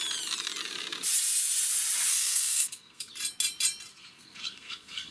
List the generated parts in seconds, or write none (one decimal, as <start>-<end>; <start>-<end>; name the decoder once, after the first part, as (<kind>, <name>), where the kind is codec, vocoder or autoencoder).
2.1-3.1 (codec, SNAC); 3.9-5.1

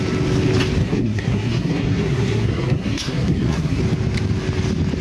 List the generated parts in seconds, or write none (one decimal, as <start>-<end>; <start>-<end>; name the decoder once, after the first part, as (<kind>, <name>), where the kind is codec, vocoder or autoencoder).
0.8-3.8 (codec, SNAC)

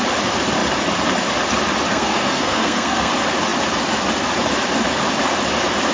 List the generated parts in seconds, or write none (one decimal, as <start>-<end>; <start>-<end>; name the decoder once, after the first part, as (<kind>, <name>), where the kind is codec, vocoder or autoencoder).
1.9-3.1 (codec, SNAC)

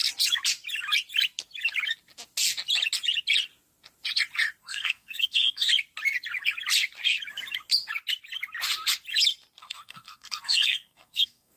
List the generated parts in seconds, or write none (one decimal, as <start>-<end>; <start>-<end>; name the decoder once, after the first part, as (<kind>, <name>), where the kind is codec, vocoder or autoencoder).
4.6-5.7 (codec, SNAC); 9.6-11.6

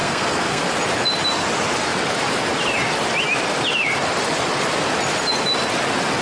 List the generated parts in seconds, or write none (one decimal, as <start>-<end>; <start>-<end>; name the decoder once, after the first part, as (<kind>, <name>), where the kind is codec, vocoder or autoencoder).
0.0-0.6 (codec, SNAC)

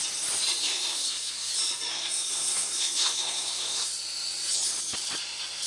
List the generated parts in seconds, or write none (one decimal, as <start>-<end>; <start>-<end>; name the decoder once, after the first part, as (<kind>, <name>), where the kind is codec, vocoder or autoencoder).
0.6-1.5 (codec, SNAC); 1.9-3.9

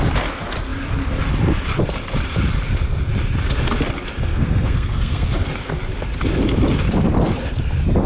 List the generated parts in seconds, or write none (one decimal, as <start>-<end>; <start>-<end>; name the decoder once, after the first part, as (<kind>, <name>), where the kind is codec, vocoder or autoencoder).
4.3-5.3 (codec, SNAC)